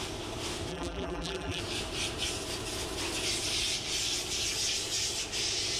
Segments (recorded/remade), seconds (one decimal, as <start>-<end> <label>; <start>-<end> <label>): 0.0-0.7 recorded; 0.7-1.6 remade; 1.6-5.8 recorded